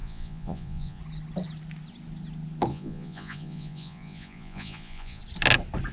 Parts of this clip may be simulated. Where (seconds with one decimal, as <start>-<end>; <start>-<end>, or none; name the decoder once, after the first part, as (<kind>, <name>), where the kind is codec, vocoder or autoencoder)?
0.0-1.0 (vocoder, Vocos); 2.7-5.2